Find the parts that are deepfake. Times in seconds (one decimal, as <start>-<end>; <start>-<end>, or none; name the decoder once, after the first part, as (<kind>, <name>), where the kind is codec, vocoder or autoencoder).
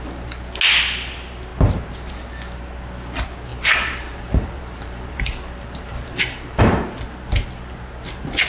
3.5-6.6 (vocoder, BigVGAN v2)